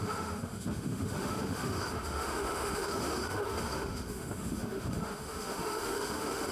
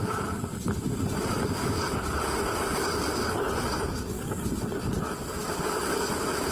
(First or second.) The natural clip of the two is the second